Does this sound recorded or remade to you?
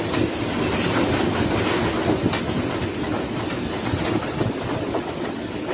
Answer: recorded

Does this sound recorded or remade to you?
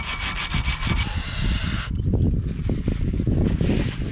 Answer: recorded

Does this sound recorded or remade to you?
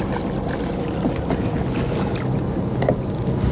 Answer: recorded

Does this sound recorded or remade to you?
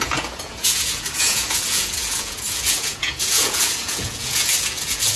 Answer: remade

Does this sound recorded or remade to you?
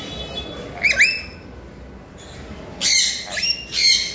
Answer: recorded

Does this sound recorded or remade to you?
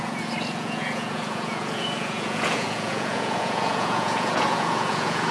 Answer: remade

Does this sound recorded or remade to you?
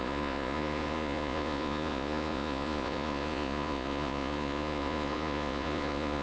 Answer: remade